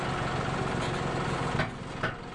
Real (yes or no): yes